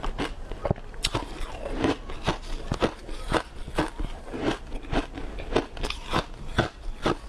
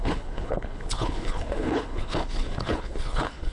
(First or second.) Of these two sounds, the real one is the first